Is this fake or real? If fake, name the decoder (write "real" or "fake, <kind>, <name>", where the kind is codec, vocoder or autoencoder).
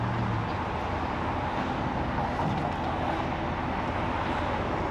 real